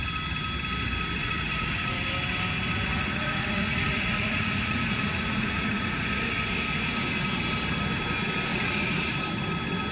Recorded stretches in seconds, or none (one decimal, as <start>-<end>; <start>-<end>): 0.0-1.2; 2.0-2.9; 6.3-8.5; 9.1-9.9